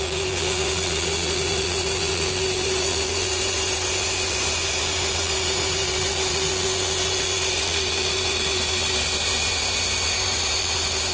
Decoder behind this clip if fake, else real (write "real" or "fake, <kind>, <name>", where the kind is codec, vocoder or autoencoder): fake, vocoder, Vocos